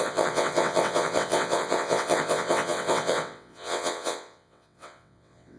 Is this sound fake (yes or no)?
yes